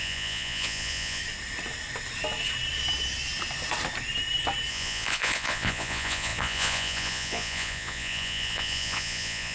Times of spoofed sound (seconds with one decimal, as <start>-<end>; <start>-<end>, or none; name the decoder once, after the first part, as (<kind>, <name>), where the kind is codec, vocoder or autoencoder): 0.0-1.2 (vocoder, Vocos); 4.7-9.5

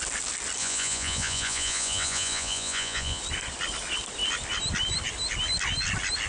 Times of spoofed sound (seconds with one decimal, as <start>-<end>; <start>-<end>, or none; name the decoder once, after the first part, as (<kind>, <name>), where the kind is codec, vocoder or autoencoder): 0.6-3.2 (vocoder, Vocos)

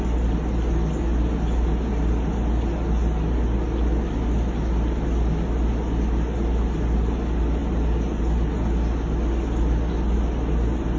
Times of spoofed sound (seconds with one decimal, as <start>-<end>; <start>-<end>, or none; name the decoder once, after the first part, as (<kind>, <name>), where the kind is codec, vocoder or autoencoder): none

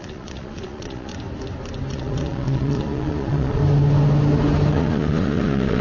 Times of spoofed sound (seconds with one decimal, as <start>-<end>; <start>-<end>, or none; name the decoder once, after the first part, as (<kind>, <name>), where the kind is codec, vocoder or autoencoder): 0.0-1.1 (vocoder, Vocos); 1.9-3.6; 4.7-5.8